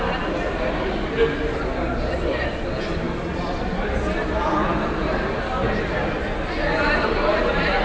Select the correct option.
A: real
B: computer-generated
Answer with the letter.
A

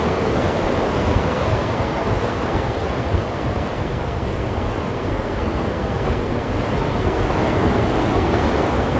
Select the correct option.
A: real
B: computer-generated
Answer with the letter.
B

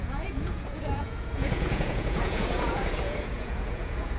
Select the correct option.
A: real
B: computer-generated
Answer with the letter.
B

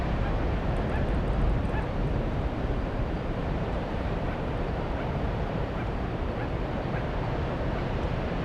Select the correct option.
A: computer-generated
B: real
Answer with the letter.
A